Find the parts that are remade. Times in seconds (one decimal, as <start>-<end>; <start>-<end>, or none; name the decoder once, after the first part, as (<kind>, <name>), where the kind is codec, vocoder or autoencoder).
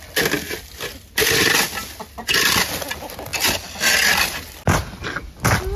none